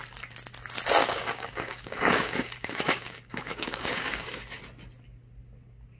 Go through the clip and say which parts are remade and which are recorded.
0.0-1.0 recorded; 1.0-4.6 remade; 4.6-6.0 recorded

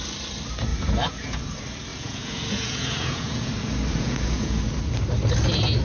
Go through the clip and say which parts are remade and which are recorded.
0.0-0.7 recorded; 0.7-1.4 remade; 1.4-1.9 recorded; 1.9-3.5 remade; 3.5-3.9 recorded; 3.9-4.6 remade; 4.6-5.8 recorded